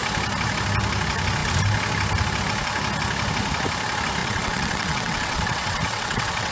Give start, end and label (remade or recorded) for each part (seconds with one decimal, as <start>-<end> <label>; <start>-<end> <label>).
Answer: 0.0-4.2 recorded; 4.2-6.5 remade

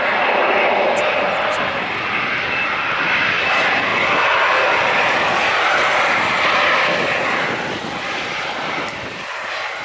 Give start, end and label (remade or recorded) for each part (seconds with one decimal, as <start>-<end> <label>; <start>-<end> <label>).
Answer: 0.0-9.8 recorded

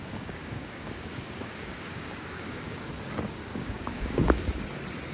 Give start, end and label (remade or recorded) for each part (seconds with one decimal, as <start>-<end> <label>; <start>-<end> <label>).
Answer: 0.0-2.9 remade; 2.9-3.5 recorded; 3.5-4.3 remade; 4.3-5.1 recorded

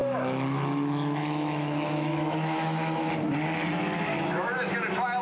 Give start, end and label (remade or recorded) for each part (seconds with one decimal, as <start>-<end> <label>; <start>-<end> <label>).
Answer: 0.0-3.1 remade; 3.1-4.1 recorded; 4.1-4.7 remade; 4.7-5.2 recorded

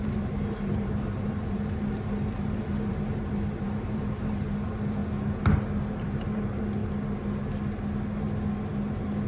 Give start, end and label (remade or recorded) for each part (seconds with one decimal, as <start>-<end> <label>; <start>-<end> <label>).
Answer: 0.0-5.0 remade; 5.0-5.9 recorded; 5.9-6.8 remade; 6.8-8.9 recorded; 8.9-9.3 remade

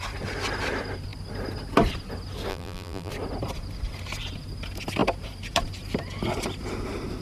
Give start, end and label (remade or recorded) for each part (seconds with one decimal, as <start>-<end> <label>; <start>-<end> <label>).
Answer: 0.0-2.5 recorded; 2.5-3.1 remade; 3.1-7.2 recorded